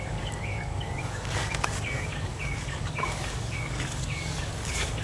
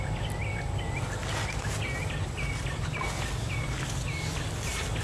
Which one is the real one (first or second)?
second